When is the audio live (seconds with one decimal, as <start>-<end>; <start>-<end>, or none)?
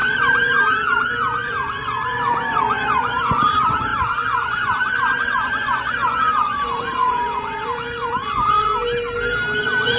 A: 8.7-9.6